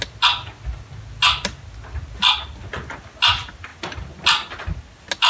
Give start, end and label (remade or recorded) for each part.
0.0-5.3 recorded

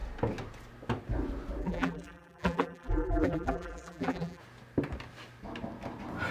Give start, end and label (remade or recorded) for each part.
0.0-1.6 recorded; 1.6-4.4 remade; 4.4-6.3 recorded

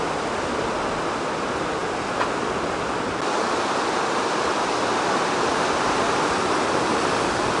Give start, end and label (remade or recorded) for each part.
0.0-7.6 recorded

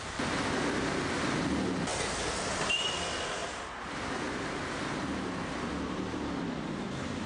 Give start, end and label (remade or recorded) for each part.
0.0-1.9 recorded; 1.9-2.8 remade; 2.8-3.4 recorded; 3.4-5.9 remade; 5.9-7.3 recorded

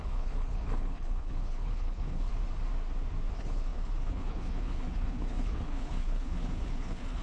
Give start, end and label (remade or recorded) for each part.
0.0-2.3 remade; 2.3-3.3 recorded; 3.3-7.2 remade

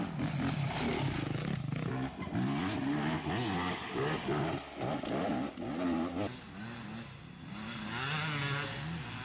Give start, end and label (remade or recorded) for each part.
0.0-9.2 recorded

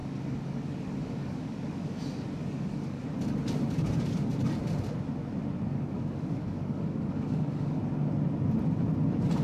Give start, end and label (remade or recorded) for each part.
0.0-2.0 remade; 2.0-2.4 recorded; 2.4-3.0 remade; 3.0-5.7 recorded; 5.7-7.8 remade; 7.8-9.4 recorded